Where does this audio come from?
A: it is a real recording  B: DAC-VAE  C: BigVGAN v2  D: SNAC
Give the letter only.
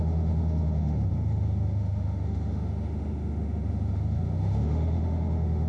B